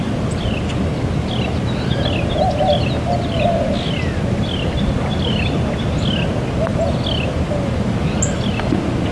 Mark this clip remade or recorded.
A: recorded